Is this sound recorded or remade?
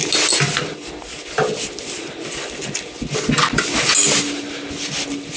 recorded